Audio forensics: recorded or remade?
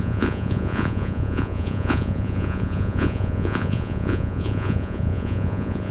remade